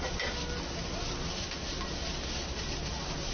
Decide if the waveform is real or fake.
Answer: real